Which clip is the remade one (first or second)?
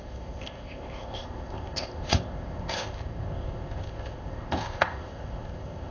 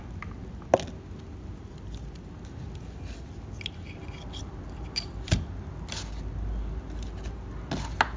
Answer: first